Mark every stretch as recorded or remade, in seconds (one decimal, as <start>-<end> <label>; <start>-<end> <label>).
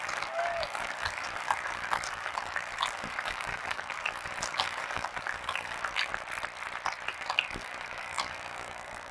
0.0-6.1 remade; 6.1-7.1 recorded; 7.1-9.1 remade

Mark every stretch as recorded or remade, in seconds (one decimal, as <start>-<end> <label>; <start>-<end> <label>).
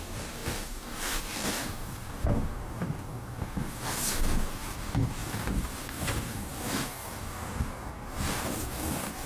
0.0-9.3 remade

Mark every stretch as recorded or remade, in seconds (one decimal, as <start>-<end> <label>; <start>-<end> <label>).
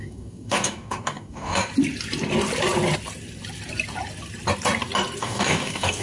0.0-1.6 remade; 1.6-5.2 recorded; 5.2-6.0 remade